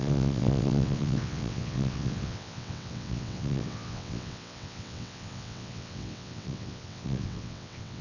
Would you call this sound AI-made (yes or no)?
yes